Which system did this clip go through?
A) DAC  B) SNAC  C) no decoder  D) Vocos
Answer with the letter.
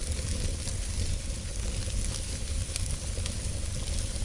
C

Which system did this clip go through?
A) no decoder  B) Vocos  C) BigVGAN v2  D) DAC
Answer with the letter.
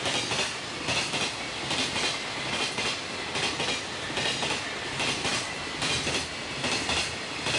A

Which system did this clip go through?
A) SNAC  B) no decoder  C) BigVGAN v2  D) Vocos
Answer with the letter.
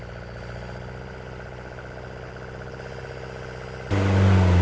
B